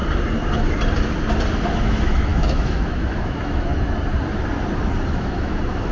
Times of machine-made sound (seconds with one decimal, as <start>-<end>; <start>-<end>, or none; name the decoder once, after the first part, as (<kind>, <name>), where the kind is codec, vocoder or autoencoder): 1.8-3.7 (autoencoder, DAC-VAE); 5.1-5.9